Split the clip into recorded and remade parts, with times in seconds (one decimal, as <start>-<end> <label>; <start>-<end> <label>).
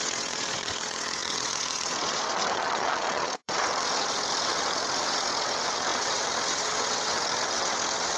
0.0-8.2 remade